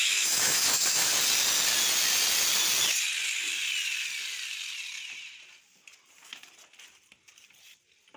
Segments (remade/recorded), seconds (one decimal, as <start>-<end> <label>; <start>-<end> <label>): 0.0-1.1 remade; 1.1-8.2 recorded